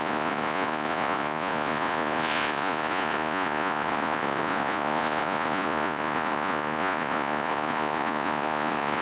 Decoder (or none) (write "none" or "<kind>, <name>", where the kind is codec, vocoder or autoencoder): vocoder, Vocos